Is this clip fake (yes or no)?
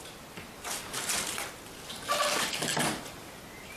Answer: no